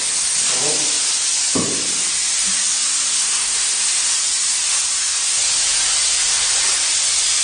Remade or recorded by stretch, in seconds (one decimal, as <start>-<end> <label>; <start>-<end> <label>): 0.0-3.1 recorded; 3.1-3.9 remade; 3.9-7.4 recorded